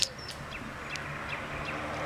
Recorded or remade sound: recorded